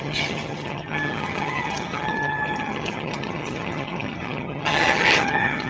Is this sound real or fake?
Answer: fake